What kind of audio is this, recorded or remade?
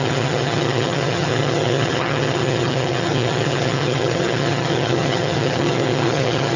remade